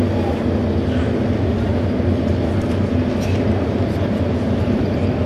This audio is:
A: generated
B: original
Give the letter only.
B